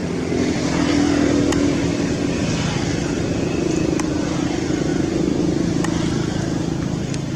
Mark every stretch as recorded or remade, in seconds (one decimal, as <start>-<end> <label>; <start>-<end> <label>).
0.0-4.9 recorded; 4.9-5.4 remade; 5.4-7.4 recorded